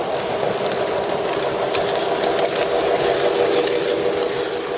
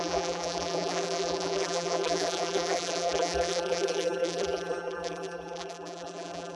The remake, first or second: second